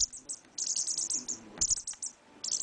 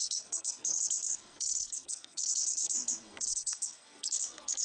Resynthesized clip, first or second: second